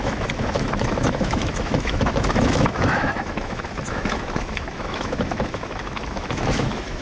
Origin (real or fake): fake